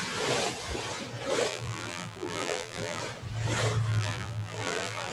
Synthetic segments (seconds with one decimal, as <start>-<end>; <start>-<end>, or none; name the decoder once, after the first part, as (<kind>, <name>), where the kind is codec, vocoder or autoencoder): 1.5-3.0 (vocoder, BigVGAN v2); 3.9-5.1